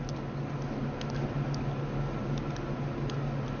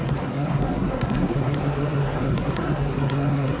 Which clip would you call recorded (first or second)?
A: first